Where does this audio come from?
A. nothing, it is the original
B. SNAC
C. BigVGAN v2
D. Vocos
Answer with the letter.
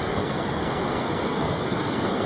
B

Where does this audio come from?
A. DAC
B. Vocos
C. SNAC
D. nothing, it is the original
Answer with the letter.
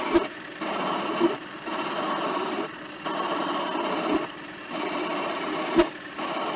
D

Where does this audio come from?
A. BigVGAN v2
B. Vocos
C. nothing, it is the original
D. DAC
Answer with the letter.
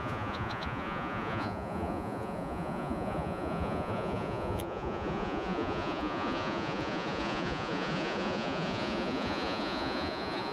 B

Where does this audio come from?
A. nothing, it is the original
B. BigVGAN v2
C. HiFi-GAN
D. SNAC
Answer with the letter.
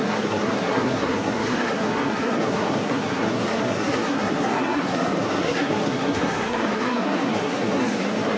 D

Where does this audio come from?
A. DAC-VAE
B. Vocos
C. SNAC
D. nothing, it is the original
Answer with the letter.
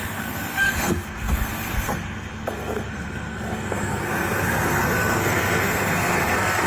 C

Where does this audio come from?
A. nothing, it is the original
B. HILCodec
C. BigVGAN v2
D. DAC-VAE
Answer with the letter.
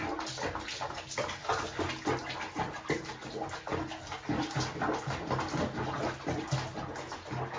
A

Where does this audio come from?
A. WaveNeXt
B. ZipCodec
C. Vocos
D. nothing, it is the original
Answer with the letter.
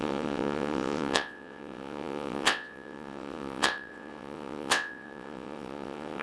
A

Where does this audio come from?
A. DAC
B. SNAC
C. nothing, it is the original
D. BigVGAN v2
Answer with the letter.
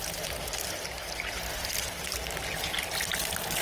C